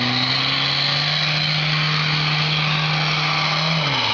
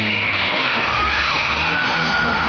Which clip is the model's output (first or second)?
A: second